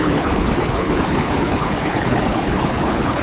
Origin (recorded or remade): remade